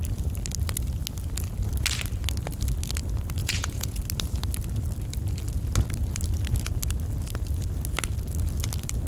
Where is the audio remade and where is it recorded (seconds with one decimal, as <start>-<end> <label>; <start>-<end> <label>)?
0.0-3.4 recorded; 3.4-4.0 remade; 4.0-9.1 recorded